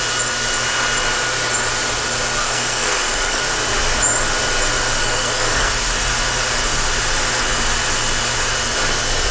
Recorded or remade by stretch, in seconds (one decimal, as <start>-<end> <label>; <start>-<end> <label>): 0.0-2.4 recorded; 2.4-3.4 remade; 3.4-5.0 recorded; 5.0-5.7 remade; 5.7-9.3 recorded